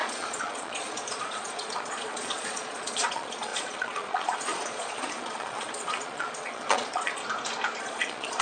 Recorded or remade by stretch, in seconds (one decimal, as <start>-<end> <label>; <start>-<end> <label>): 0.0-7.2 remade; 7.2-7.8 recorded; 7.8-8.4 remade